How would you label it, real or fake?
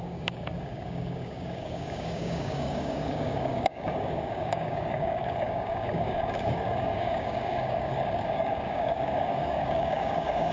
fake